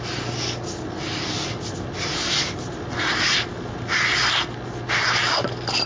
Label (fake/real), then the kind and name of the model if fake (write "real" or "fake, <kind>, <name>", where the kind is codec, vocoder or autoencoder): real